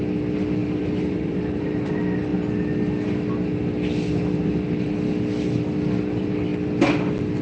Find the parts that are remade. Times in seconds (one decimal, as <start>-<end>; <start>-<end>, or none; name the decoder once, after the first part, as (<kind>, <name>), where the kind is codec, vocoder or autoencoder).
0.6-1.9 (vocoder, BigVGAN v2)